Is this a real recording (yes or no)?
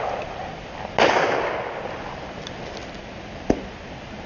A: yes